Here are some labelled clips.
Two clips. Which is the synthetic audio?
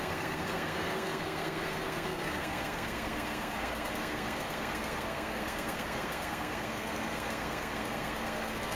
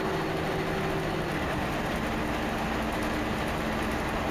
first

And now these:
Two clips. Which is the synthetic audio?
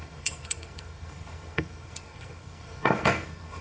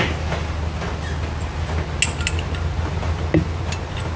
first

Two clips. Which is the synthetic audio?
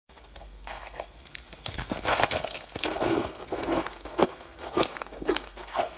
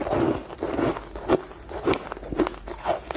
first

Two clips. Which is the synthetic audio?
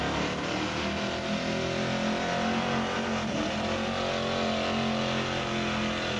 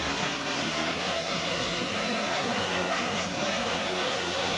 second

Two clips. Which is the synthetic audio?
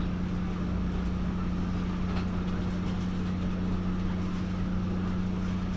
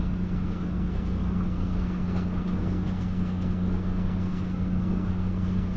second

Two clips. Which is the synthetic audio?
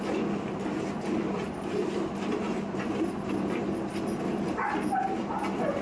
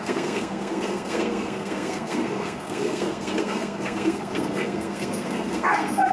second